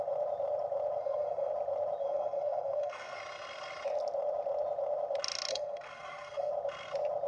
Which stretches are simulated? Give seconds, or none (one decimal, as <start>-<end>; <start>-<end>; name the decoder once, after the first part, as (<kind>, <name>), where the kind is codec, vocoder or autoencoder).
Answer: 1.0-1.5 (codec, SNAC); 2.0-3.2; 5.5-6.5